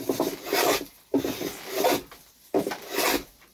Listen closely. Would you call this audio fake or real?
real